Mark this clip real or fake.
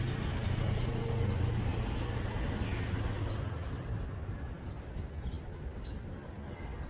real